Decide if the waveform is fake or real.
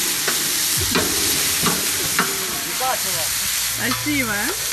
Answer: real